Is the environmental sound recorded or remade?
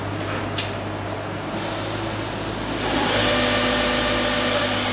recorded